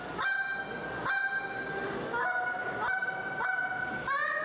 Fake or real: real